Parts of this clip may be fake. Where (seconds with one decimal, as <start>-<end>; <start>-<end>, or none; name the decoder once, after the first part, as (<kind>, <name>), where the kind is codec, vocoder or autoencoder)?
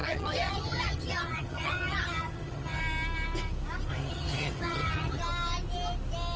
0.0-2.8 (vocoder, HiFi-GAN); 3.9-5.2